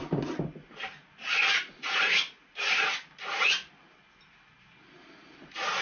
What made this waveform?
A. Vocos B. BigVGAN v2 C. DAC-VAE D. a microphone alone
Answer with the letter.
D